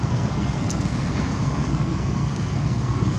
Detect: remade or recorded remade